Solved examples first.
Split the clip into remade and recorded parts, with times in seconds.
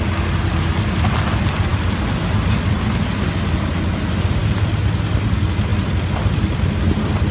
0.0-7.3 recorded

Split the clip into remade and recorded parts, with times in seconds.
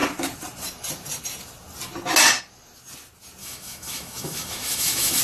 0.0-3.4 recorded; 3.4-5.2 remade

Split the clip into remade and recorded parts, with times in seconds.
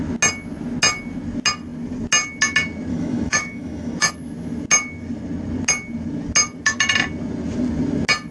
0.0-2.9 recorded; 2.9-4.1 remade; 4.1-8.3 recorded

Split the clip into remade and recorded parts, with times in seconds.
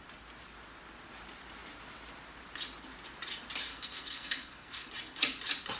0.0-3.7 recorded; 3.7-4.9 remade; 4.9-5.8 recorded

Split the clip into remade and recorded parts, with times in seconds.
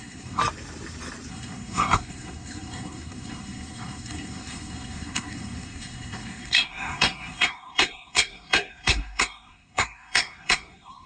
0.0-0.4 remade; 0.4-1.3 recorded; 1.3-11.1 remade